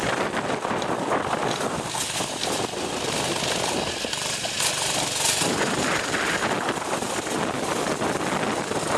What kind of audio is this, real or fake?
real